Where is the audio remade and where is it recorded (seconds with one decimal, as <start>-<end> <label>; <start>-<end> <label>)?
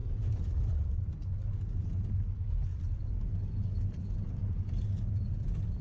0.0-1.1 remade; 1.1-2.7 recorded; 2.7-3.6 remade; 3.6-5.8 recorded